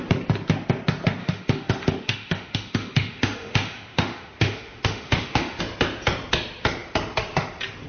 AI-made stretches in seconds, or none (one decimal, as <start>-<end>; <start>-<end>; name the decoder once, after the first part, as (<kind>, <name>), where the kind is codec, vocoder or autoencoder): 1.2-5.6 (autoencoder, DAC-VAE)